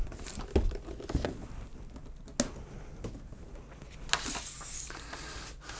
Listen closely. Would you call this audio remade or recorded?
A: recorded